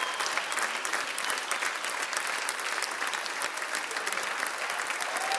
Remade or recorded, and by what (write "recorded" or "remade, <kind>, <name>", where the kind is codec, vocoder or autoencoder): recorded